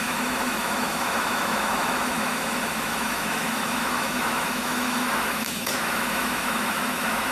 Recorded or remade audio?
remade